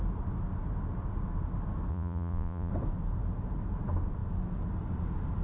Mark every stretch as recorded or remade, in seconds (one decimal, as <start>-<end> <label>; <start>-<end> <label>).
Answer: 0.0-1.9 recorded; 1.9-2.7 remade; 2.7-5.4 recorded